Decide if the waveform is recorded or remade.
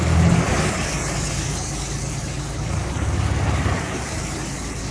remade